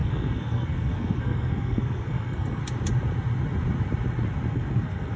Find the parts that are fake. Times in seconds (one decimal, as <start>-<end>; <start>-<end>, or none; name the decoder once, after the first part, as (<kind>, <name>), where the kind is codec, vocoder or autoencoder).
0.0-2.6 (codec, SNAC); 4.5-5.2